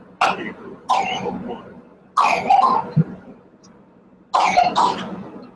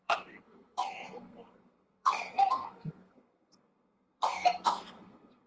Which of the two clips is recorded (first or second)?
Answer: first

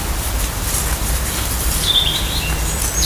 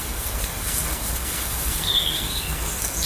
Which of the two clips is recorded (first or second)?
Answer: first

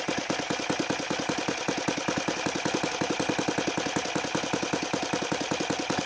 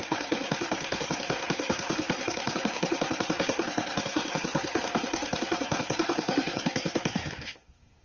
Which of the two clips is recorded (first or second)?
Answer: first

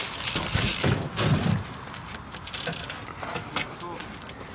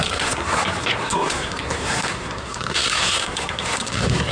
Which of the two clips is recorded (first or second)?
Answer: first